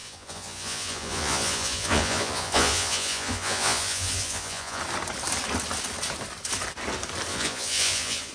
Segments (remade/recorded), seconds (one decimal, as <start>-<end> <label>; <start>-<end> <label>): 0.0-4.8 remade; 4.8-7.3 recorded; 7.3-8.3 remade